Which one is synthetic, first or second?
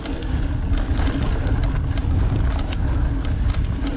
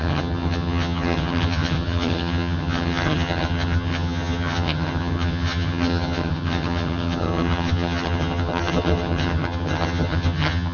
second